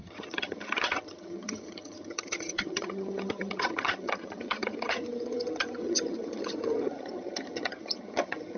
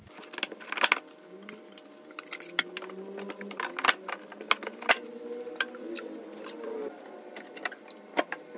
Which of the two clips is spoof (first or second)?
first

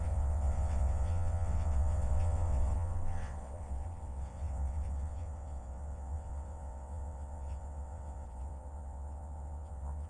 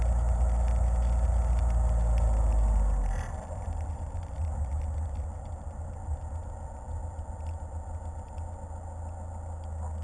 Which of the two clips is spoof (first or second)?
first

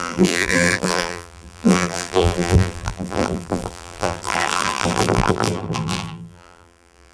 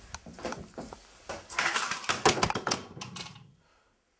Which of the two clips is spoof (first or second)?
first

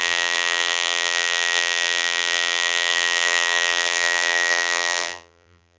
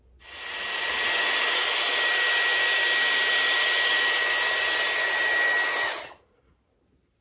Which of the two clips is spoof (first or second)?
first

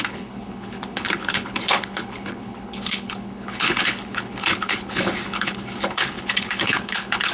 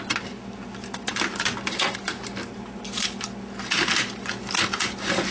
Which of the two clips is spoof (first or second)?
first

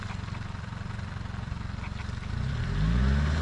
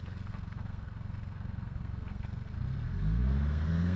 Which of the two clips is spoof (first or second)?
second